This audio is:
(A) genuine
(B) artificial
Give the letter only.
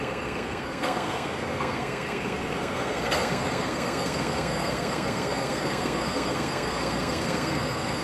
B